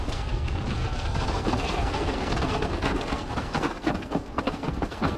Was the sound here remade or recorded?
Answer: remade